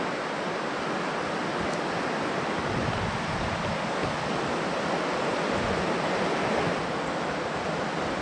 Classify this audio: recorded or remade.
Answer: recorded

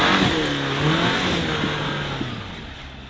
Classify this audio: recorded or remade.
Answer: recorded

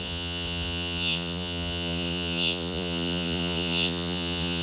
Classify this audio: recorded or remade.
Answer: remade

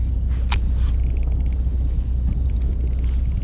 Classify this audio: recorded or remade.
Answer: recorded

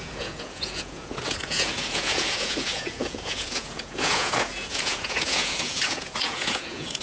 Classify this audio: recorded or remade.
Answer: remade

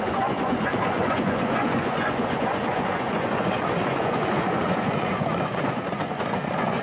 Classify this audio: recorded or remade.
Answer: remade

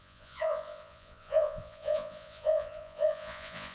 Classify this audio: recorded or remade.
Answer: remade